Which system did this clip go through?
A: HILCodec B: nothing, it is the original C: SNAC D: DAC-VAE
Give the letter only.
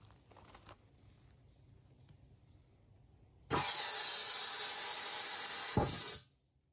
B